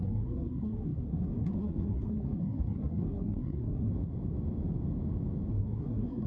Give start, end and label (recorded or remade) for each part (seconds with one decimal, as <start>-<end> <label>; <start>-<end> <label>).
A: 0.0-3.9 remade; 3.9-5.5 recorded; 5.5-6.3 remade